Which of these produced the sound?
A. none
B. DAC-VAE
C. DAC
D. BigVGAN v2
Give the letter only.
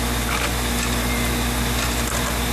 A